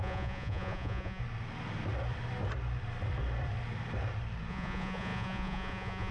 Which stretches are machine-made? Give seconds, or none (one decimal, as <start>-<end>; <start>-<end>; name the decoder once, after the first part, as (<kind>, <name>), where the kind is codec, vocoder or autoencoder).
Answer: 0.0-1.2 (vocoder, Vocos); 4.5-6.1